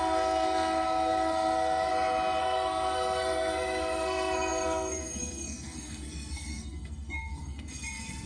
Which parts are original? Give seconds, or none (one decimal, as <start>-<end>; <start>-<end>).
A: 1.9-2.4